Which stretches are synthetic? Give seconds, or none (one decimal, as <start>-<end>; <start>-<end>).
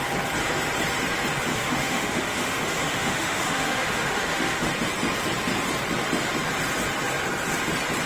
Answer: 1.5-4.7